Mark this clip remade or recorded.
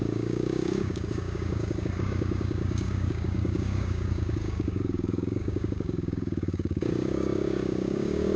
remade